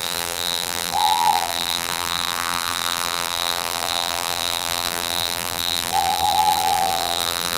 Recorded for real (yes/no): no